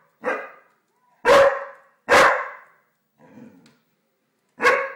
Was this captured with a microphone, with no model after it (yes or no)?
yes